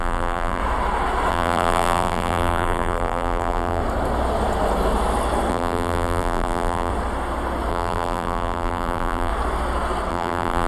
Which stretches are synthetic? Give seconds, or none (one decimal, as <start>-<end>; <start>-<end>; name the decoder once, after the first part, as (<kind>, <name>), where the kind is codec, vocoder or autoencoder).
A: 0.0-0.6 (vocoder, BigVGAN v2); 1.3-3.8; 5.5-6.9; 7.7-9.3; 10.1-10.7